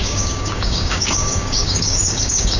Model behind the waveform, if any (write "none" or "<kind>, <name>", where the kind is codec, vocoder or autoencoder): codec, DAC